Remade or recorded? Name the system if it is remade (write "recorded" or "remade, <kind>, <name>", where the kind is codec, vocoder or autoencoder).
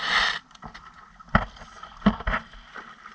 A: recorded